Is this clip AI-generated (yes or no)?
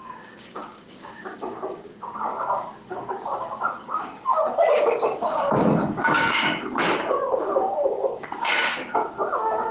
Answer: yes